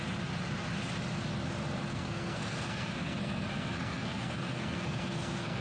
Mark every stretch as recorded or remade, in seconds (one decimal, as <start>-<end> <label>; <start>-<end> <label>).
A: 0.0-1.9 recorded; 1.9-5.6 remade